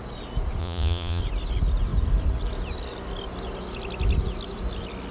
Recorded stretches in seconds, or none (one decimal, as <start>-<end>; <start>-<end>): 0.0-0.6; 1.2-5.1